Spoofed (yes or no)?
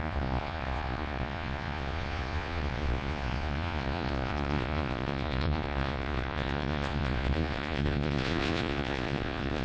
yes